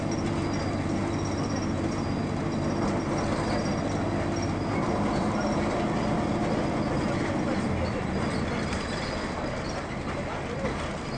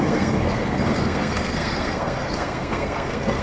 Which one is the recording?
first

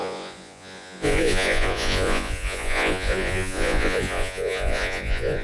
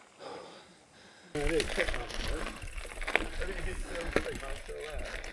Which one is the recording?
second